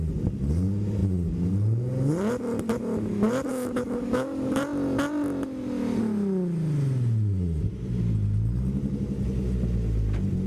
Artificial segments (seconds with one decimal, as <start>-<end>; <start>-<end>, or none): 3.5-4.6